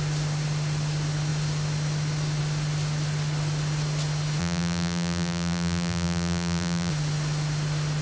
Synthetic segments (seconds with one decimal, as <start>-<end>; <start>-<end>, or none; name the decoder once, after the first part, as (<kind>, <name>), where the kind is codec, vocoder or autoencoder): 4.4-6.9 (vocoder, BigVGAN v2)